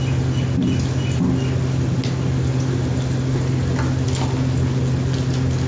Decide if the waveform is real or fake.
real